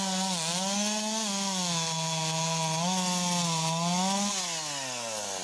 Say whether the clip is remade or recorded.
recorded